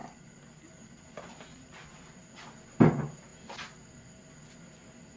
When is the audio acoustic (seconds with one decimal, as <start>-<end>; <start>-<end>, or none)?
0.0-5.2